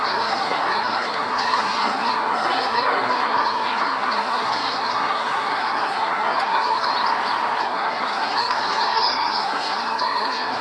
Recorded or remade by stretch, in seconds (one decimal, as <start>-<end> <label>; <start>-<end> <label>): 0.0-6.9 remade; 6.9-7.6 recorded; 7.6-10.6 remade